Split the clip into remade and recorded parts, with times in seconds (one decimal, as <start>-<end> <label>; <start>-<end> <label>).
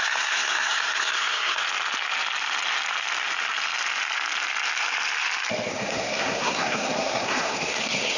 0.0-1.6 remade; 1.6-5.7 recorded; 5.7-8.2 remade